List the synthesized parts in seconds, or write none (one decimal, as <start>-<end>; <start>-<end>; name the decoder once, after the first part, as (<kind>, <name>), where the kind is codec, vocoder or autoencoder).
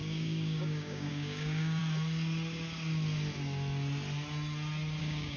0.0-1.8 (codec, DAC); 5.0-5.4